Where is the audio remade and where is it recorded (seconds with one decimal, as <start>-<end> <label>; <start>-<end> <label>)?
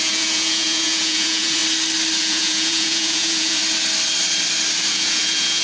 0.0-1.6 remade; 1.6-2.2 recorded; 2.2-3.6 remade; 3.6-4.9 recorded; 4.9-5.6 remade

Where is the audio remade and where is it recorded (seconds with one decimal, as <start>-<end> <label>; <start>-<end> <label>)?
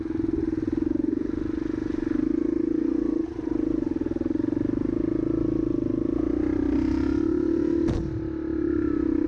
0.0-8.5 recorded; 8.5-9.3 remade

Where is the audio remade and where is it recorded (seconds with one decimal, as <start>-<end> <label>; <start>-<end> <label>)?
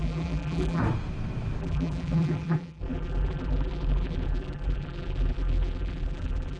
0.0-0.8 remade; 0.8-1.6 recorded; 1.6-6.6 remade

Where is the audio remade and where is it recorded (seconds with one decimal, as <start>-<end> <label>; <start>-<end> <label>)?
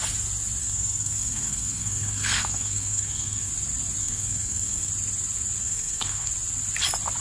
0.0-0.6 recorded; 0.6-3.5 remade; 3.5-4.0 recorded; 4.0-4.9 remade; 4.9-5.6 recorded; 5.6-6.3 remade; 6.3-7.2 recorded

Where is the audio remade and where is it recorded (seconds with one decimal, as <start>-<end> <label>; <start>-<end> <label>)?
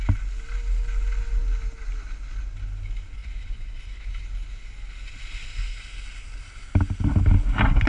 0.0-3.2 recorded; 3.2-3.8 remade; 3.8-7.9 recorded